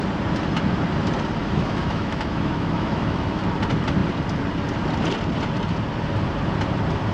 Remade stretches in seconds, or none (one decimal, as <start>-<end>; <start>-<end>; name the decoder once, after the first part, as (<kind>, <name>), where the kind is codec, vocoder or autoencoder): 1.4-3.4 (autoencoder, DAC-VAE)